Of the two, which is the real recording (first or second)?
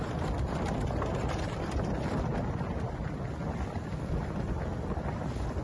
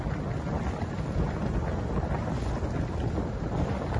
second